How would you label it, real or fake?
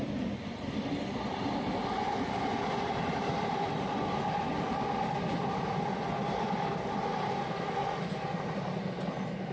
real